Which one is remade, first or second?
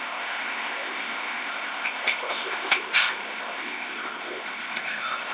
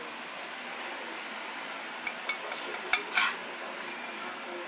first